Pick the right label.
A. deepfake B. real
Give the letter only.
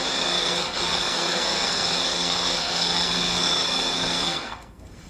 A